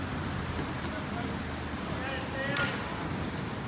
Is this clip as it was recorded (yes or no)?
yes